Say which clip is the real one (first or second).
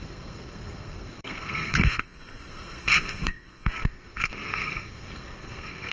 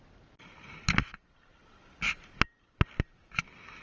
second